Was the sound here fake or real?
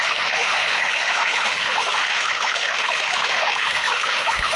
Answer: fake